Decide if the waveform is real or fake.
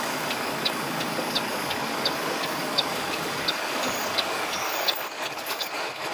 fake